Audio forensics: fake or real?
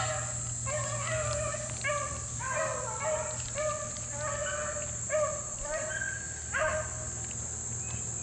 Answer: real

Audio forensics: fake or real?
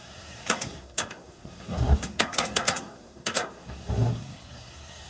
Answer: fake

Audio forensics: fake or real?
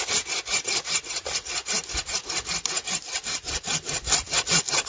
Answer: real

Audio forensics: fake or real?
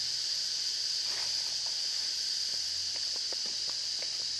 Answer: real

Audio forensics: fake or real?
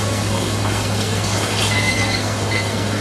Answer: fake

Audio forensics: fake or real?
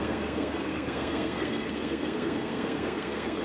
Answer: fake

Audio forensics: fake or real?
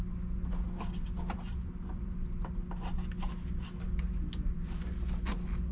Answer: real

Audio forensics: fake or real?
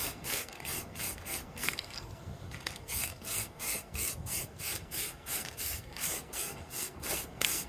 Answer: fake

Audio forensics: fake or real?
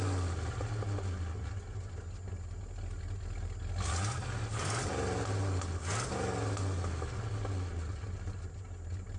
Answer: real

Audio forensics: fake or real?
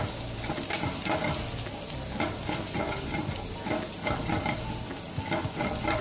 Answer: real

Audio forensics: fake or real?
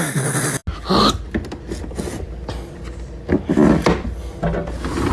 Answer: real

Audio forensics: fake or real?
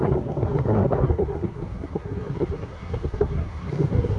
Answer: fake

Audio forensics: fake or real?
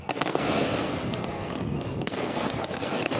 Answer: fake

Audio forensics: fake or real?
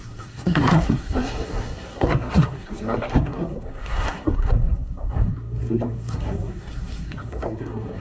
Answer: fake